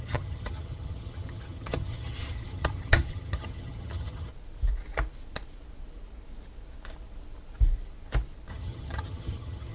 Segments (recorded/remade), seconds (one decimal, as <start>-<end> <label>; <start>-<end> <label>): 0.0-4.3 remade; 4.3-8.5 recorded; 8.5-9.7 remade